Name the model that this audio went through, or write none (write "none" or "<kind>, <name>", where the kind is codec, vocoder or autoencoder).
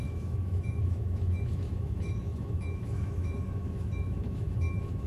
autoencoder, DAC-VAE